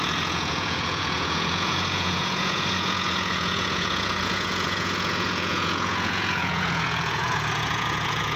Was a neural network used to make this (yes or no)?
yes